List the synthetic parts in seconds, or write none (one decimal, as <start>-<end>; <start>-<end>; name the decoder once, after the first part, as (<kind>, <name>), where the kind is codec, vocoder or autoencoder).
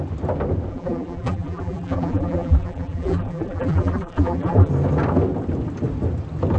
0.7-4.7 (vocoder, BigVGAN v2)